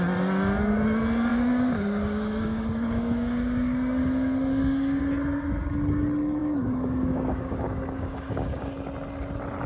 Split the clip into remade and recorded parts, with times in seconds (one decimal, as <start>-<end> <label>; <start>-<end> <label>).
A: 0.0-1.3 recorded; 1.3-5.0 remade; 5.0-6.4 recorded; 6.4-8.7 remade; 8.7-9.7 recorded